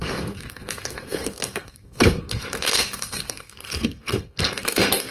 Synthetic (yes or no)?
yes